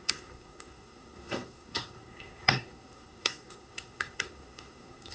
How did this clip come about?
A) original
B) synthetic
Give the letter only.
B